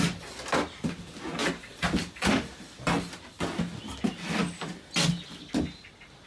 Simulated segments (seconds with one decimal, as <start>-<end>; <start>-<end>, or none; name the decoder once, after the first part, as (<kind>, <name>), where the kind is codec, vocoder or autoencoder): none